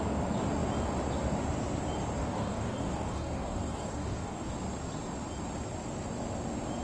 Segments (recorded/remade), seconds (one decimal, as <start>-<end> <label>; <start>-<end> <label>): 0.0-2.2 recorded; 2.2-4.5 remade; 4.5-6.8 recorded